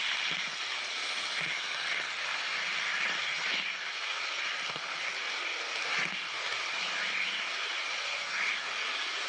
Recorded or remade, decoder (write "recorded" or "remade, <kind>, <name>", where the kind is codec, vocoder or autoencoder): recorded